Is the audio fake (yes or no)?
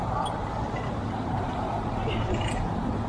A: yes